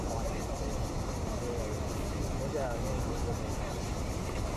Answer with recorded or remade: recorded